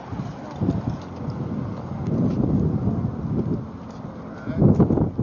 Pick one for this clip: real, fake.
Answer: real